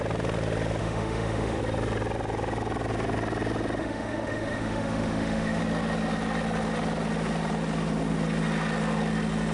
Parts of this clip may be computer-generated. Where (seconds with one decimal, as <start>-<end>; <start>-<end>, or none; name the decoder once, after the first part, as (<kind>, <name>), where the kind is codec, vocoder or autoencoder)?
0.8-1.6 (autoencoder, DAC-VAE); 3.8-5.6